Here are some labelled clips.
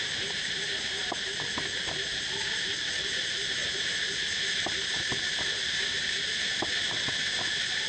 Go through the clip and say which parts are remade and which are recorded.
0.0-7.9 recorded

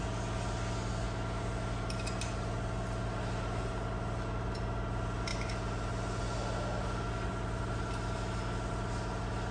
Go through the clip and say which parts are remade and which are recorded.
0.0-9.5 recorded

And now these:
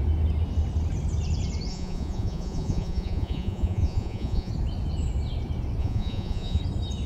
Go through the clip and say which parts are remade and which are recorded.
0.0-1.7 recorded; 1.7-4.5 remade; 4.5-5.8 recorded; 5.8-6.6 remade; 6.6-7.1 recorded

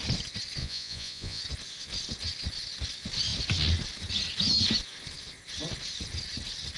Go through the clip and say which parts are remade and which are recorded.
0.0-0.6 recorded; 0.6-1.4 remade; 1.4-6.8 recorded

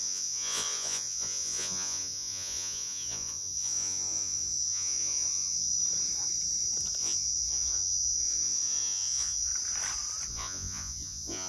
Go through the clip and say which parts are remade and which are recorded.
0.0-5.7 remade; 5.7-7.0 recorded; 7.0-9.5 remade; 9.5-10.3 recorded; 10.3-11.5 remade

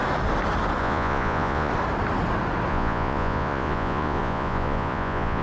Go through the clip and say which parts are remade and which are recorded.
0.0-0.8 recorded; 0.8-1.7 remade; 1.7-2.7 recorded; 2.7-5.4 remade

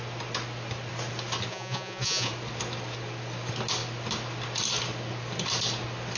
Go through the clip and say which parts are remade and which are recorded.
0.0-1.5 recorded; 1.5-2.3 remade; 2.3-6.2 recorded